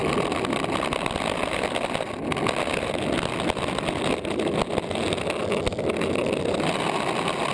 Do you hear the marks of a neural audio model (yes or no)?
no